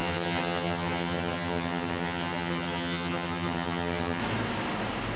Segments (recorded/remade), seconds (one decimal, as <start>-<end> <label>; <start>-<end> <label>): 0.0-4.2 remade; 4.2-5.2 recorded